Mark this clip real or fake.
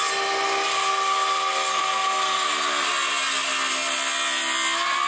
real